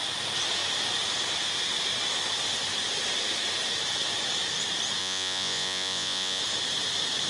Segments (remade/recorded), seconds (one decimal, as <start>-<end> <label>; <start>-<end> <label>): 0.0-5.0 recorded; 5.0-6.4 remade; 6.4-7.3 recorded